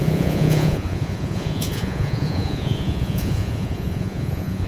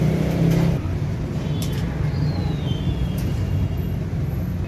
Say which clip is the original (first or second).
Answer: second